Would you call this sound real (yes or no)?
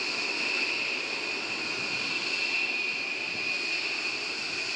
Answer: yes